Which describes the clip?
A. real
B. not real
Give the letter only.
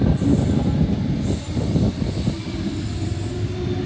A